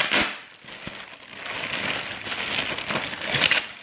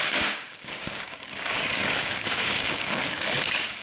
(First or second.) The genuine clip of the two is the first